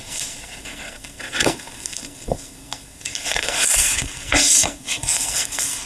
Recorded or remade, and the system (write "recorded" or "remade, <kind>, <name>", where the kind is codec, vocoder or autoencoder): remade, codec, SNAC